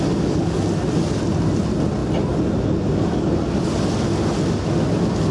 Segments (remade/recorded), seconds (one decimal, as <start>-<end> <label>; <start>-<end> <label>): 0.0-5.3 recorded